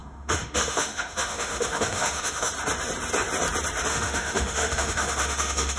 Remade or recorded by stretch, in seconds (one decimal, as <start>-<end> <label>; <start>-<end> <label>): 0.0-2.5 remade; 2.5-3.9 recorded; 3.9-5.8 remade